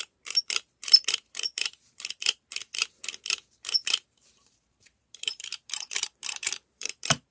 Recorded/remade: remade